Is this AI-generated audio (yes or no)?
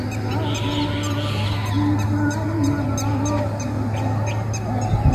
no